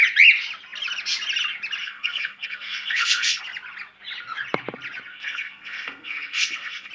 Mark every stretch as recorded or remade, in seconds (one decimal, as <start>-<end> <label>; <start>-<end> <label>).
0.0-1.8 recorded; 1.8-3.4 remade; 3.4-5.1 recorded; 5.1-6.9 remade